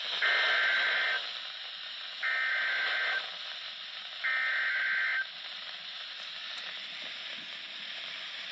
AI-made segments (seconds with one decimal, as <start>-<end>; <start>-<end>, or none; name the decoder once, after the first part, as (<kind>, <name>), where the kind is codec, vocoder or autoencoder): none